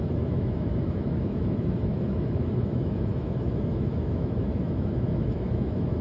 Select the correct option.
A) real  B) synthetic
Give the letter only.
B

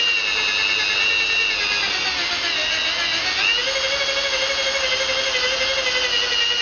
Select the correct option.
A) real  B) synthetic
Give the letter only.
A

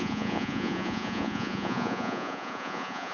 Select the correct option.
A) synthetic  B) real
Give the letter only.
A